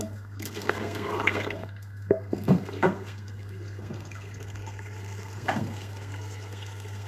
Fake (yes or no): yes